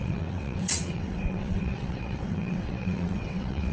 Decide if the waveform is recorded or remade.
remade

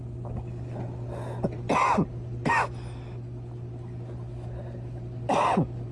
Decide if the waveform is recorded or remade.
recorded